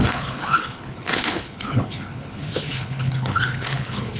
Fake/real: fake